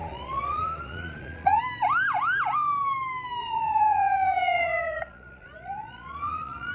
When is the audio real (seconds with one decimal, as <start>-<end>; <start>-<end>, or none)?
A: 1.6-3.4